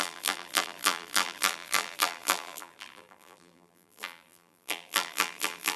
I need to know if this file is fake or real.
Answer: fake